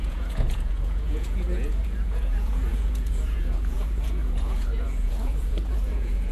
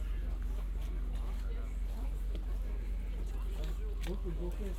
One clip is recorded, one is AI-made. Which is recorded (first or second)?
second